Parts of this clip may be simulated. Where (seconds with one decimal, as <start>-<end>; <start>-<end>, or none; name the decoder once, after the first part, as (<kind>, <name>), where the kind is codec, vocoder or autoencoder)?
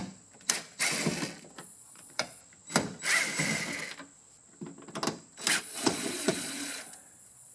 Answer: 1.6-2.4 (vocoder, Vocos); 5.6-7.5